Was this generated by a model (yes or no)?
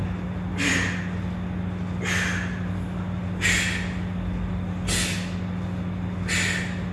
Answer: no